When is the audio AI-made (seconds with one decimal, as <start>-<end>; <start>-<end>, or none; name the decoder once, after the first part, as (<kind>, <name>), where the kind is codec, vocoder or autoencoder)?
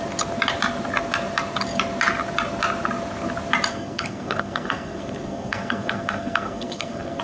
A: 3.7-7.2 (codec, SNAC)